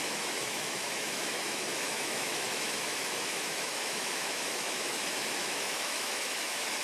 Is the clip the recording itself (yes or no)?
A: no